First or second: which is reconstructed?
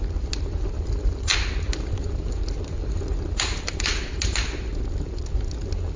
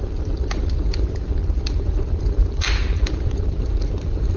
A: second